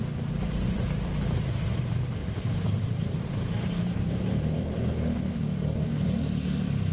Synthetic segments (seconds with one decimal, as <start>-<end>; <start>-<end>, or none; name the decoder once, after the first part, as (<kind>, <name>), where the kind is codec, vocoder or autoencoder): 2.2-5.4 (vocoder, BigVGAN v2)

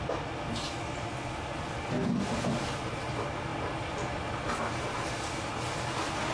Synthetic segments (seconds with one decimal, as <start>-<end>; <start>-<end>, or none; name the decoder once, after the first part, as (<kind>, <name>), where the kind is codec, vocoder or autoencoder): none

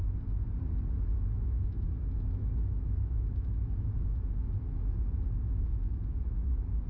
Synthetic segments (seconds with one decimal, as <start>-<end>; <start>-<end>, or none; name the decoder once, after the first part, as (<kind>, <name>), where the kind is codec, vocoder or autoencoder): 1.1-4.9 (autoencoder, DAC-VAE); 5.4-6.5